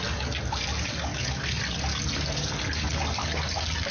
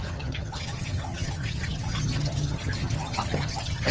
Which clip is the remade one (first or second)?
second